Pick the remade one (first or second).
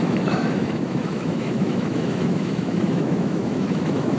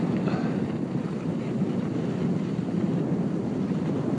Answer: first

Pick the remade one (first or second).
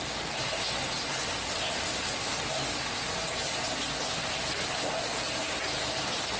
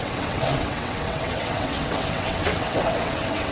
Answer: second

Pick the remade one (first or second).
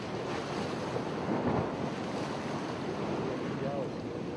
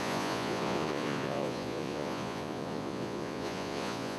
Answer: second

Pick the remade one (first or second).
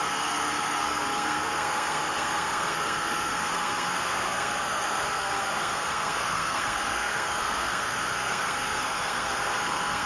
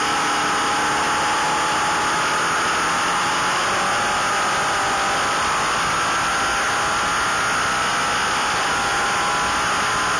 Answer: first